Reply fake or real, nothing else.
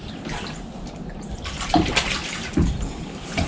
real